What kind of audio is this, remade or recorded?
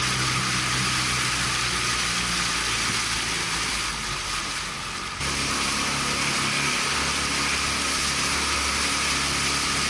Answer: recorded